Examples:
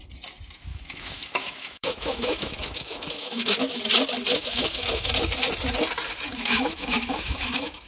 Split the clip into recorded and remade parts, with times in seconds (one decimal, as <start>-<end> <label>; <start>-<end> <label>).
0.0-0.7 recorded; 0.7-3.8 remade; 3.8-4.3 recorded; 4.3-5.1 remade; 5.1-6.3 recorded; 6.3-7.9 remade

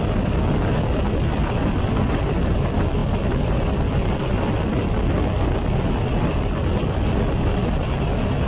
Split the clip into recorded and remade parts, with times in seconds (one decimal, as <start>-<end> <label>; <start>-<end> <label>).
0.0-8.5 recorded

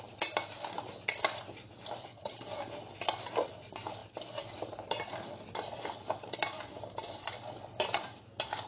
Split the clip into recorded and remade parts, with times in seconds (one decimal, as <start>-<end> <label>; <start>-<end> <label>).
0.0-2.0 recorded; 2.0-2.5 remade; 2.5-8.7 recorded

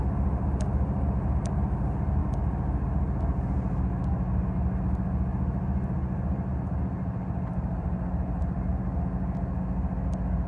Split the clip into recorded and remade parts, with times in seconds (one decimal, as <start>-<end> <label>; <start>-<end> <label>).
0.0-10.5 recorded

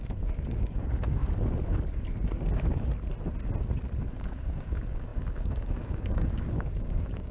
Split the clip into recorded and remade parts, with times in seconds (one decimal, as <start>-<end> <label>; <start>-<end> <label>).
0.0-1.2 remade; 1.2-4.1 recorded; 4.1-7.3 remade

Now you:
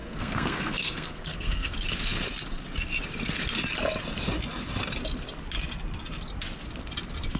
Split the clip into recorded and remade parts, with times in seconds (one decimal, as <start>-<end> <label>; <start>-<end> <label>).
0.0-1.7 remade; 1.7-7.4 recorded

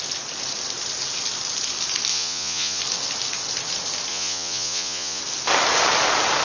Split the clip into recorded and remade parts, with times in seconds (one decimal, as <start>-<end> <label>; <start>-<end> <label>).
0.0-2.1 recorded; 2.1-2.8 remade; 2.8-4.1 recorded; 4.1-5.2 remade; 5.2-6.4 recorded